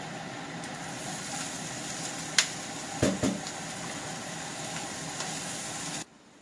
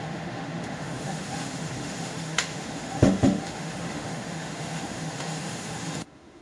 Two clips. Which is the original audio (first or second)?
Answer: first